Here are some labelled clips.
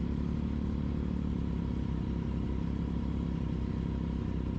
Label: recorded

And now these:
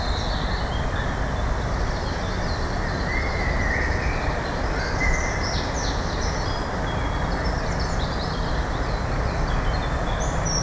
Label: recorded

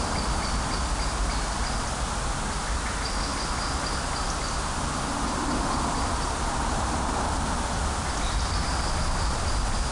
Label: recorded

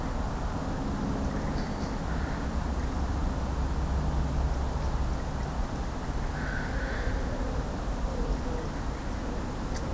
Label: recorded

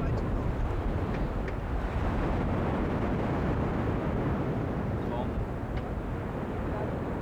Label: recorded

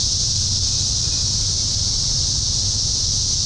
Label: recorded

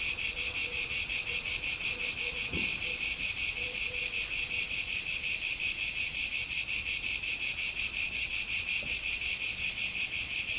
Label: remade